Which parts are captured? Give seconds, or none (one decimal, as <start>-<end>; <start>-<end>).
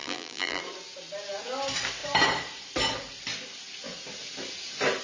0.6-5.0